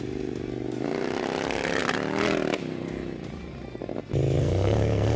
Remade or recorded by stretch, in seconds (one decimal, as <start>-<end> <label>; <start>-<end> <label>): 0.0-4.4 recorded; 4.4-5.2 remade